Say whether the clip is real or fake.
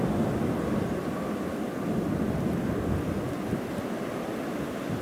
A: real